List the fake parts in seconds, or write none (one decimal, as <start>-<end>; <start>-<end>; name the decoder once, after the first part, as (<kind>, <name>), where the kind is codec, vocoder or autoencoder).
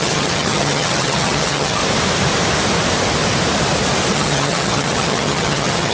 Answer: 0.0-1.8 (vocoder, HiFi-GAN); 4.1-5.9